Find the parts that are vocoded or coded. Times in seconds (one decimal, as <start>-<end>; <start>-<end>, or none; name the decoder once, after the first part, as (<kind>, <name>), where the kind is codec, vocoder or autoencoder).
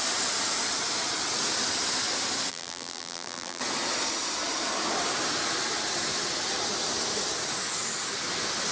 2.5-3.6 (vocoder, BigVGAN v2)